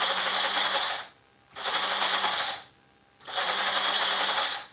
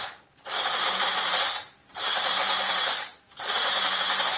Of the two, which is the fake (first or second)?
second